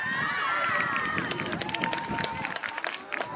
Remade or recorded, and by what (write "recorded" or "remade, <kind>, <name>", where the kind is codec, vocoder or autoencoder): recorded